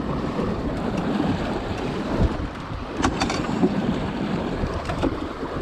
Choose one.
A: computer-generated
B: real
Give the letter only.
A